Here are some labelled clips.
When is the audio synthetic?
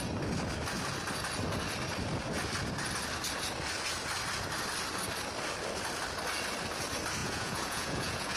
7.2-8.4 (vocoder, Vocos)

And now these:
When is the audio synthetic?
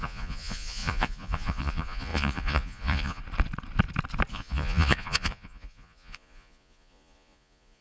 0.0-3.2 (vocoder, Vocos); 4.3-7.8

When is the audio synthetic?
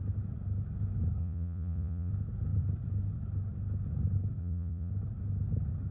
1.2-2.1 (vocoder, Vocos); 4.4-4.9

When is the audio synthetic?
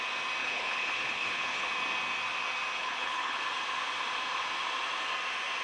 0.4-1.7 (codec, HILCodec); 2.8-3.4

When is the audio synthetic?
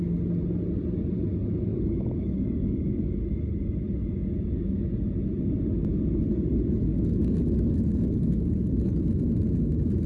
1.7-3.1 (codec, DAC); 6.9-9.0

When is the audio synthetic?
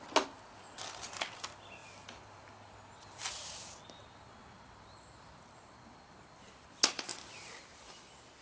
none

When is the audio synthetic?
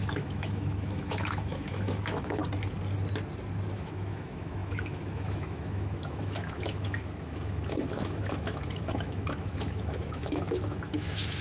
0.0-2.4 (autoencoder, DAC-VAE); 3.7-11.4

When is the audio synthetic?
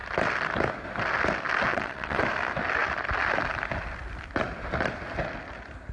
1.7-2.2 (vocoder, WaveNeXt)